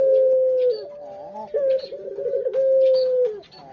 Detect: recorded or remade recorded